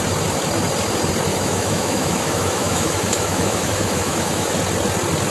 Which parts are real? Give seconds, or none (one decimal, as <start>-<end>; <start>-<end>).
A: 0.0-1.3; 4.5-5.3